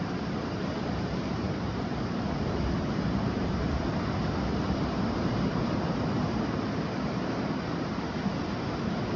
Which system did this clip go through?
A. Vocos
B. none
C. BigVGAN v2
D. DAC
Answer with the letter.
C